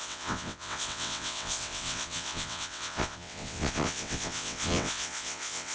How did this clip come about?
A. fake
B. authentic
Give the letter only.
A